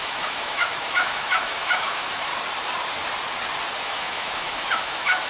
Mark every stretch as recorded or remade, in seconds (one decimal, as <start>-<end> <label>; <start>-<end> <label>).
0.0-2.3 remade; 2.3-3.8 recorded; 3.8-5.3 remade